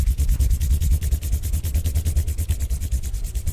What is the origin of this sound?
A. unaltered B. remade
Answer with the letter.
A